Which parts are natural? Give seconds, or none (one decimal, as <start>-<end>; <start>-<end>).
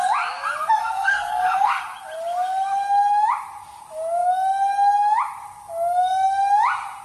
0.0-0.8; 1.8-7.0